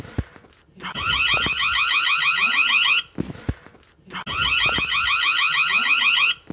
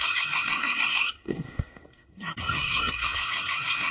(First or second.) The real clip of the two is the first